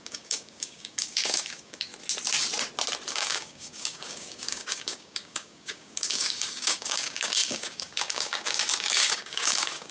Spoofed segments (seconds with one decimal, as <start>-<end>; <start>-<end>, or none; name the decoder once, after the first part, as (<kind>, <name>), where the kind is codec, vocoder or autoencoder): 0.0-1.9 (codec, DAC); 3.1-9.9